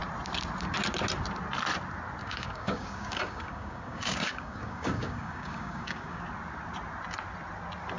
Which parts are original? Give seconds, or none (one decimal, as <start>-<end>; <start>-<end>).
0.0-2.2; 6.2-8.0